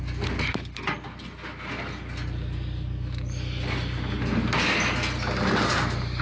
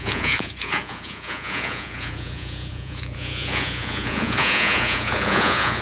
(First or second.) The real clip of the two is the first